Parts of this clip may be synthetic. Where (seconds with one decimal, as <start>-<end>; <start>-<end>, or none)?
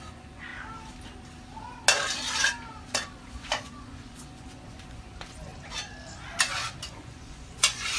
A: 0.0-0.5; 3.3-5.5; 6.8-8.0